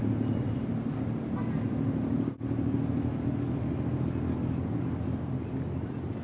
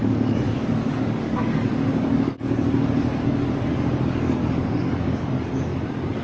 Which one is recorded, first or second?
first